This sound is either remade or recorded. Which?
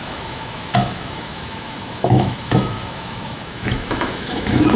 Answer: remade